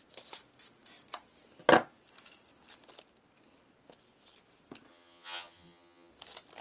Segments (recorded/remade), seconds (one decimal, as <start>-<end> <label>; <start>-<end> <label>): 0.0-4.9 recorded; 4.9-6.1 remade; 6.1-6.6 recorded